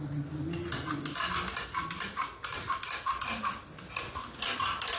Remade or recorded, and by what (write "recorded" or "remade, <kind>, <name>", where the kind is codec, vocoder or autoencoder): recorded